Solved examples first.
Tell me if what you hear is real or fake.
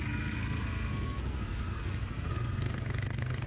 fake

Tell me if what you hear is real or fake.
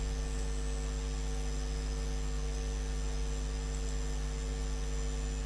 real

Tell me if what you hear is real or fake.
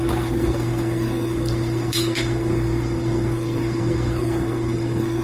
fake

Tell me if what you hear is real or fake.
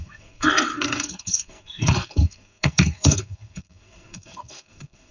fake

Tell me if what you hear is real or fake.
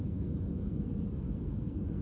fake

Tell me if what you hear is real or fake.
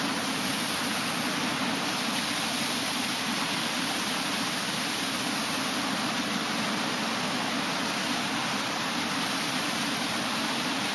real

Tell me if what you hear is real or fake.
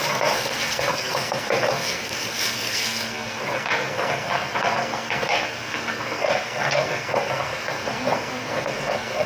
fake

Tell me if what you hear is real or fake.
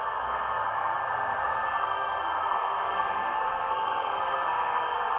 fake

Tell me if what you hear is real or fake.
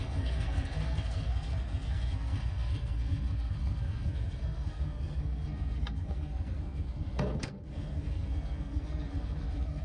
fake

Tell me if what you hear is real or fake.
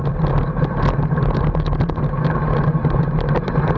real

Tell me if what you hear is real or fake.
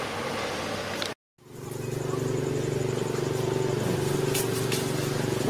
real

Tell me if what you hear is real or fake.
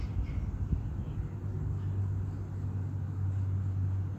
real